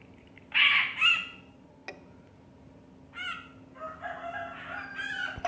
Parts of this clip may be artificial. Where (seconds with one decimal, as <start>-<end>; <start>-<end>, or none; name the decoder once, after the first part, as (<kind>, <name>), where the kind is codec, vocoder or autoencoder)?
none